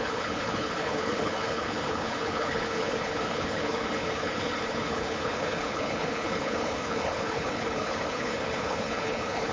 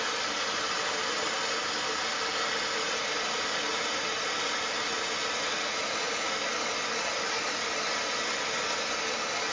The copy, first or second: first